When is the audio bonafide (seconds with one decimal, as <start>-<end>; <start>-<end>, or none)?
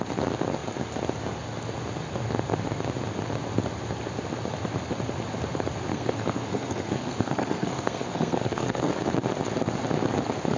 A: 0.0-5.9; 8.9-10.6